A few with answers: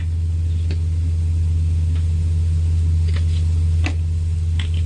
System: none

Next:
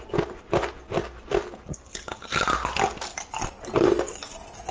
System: none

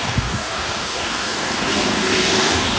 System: codec, DAC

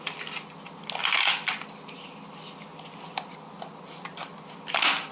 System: none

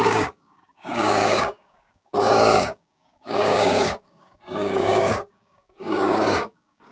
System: codec, DAC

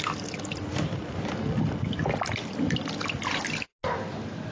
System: none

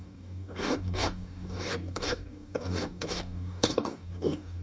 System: codec, DAC